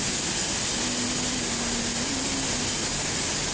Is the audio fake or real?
real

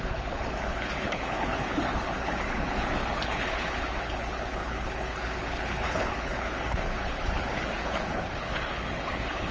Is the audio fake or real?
fake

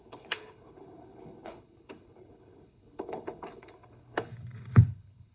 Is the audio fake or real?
fake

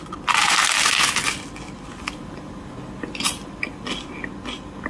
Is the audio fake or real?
real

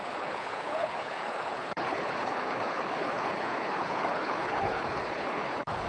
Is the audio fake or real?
fake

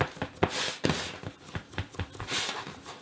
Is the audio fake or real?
real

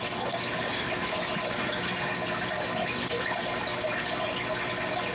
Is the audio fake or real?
real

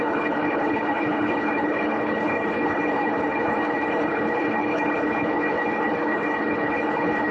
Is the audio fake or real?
fake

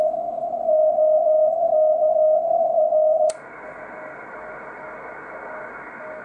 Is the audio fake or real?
real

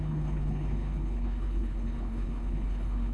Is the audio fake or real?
fake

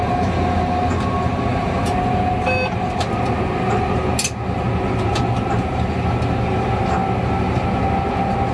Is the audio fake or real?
real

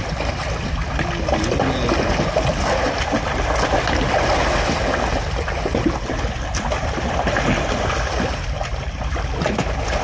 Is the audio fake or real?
real